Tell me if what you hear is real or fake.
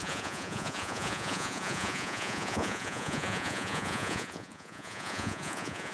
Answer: fake